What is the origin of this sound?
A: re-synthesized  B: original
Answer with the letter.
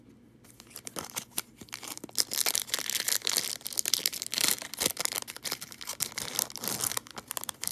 B